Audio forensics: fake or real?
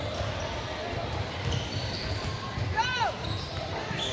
fake